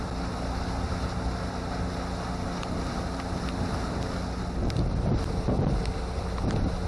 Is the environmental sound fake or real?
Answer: real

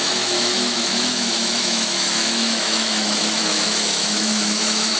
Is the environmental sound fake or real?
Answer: fake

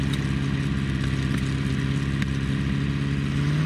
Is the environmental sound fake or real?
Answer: real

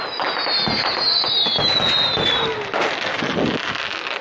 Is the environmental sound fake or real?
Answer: real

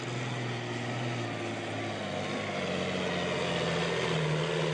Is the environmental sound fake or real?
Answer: real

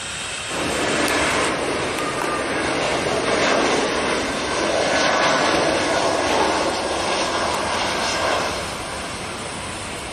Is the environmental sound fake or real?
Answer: real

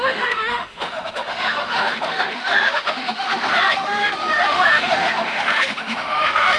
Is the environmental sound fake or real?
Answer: fake